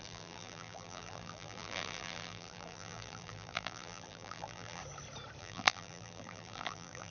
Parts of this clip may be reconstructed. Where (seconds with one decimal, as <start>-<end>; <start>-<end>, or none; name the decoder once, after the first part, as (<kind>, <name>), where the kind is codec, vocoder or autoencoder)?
0.0-4.8 (vocoder, BigVGAN v2); 5.4-7.1